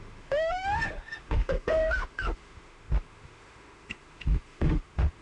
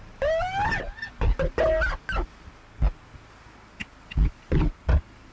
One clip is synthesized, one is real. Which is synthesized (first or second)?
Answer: first